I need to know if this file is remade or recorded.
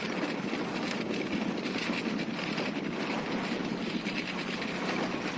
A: recorded